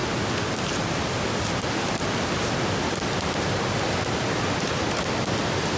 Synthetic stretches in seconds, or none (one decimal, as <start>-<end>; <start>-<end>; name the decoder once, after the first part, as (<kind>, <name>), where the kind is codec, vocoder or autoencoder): none